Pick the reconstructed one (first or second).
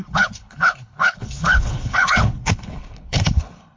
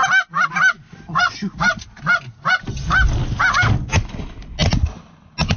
first